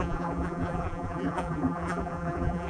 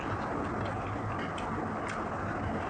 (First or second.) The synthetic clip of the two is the first